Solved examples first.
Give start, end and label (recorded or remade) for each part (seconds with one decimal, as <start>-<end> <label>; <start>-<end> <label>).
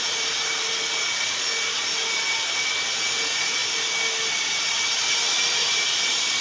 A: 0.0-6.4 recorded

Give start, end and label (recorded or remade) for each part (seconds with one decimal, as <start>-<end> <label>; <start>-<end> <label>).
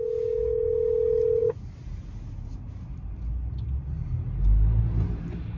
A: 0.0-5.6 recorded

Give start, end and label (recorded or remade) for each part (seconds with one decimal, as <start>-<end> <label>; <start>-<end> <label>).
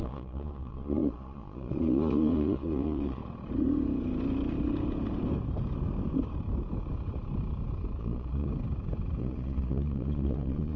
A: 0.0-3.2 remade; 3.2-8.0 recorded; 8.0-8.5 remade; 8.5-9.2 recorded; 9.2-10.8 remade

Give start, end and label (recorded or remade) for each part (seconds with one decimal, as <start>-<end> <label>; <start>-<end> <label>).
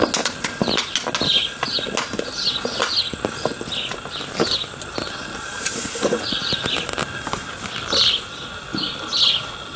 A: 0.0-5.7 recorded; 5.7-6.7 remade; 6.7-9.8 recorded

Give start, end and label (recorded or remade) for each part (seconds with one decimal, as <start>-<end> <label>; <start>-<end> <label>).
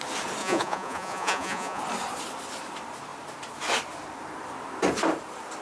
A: 0.0-0.4 recorded; 0.4-1.8 remade; 1.8-5.6 recorded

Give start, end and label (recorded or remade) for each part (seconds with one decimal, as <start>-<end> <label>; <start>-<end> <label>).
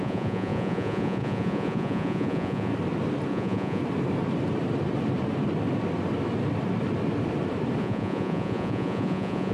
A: 0.0-2.7 remade; 2.7-3.3 recorded; 3.3-3.8 remade; 3.8-7.8 recorded; 7.8-9.5 remade